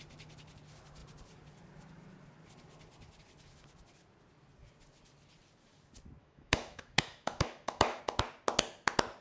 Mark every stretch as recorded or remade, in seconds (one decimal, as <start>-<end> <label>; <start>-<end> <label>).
0.0-6.2 recorded; 6.2-8.0 remade; 8.0-9.2 recorded